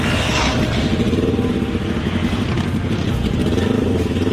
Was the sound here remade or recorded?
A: recorded